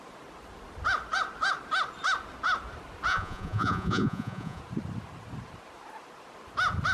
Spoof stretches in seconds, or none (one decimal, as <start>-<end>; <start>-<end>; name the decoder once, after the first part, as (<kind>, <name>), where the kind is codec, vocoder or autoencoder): 3.1-4.6 (vocoder, Vocos)